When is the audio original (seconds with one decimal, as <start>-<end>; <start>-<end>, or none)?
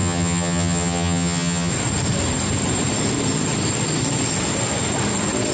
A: 1.7-5.5